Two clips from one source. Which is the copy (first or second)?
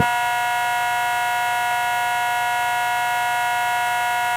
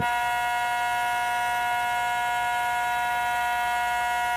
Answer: second